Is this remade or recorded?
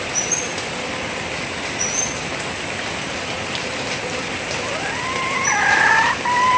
recorded